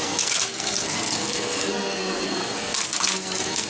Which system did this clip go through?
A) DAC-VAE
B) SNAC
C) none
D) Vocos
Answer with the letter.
B